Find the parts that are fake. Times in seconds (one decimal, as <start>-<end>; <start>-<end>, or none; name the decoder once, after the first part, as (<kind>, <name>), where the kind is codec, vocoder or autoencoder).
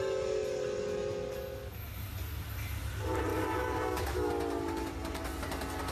3.3-4.3 (codec, DAC)